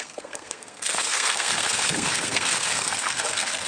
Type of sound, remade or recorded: remade